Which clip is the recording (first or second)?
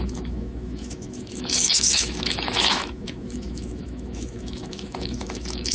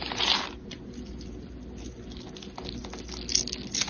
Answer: second